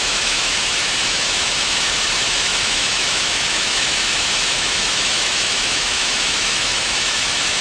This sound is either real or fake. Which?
fake